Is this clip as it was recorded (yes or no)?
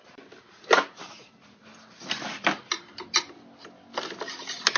yes